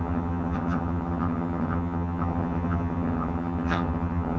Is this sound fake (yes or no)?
yes